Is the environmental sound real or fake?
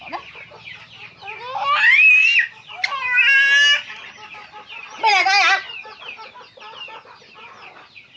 real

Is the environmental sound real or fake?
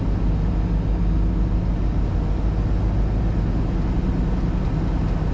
real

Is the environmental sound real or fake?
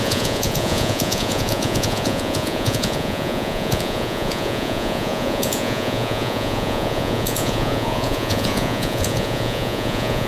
fake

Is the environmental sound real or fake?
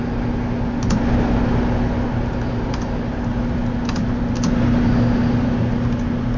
real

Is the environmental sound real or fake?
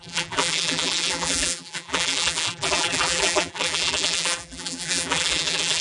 fake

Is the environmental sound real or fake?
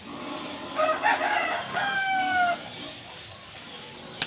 real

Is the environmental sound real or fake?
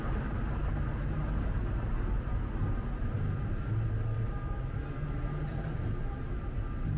real